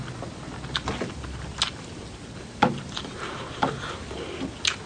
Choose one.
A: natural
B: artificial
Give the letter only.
A